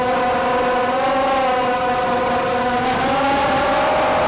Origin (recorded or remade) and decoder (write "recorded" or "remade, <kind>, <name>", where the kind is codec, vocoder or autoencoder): recorded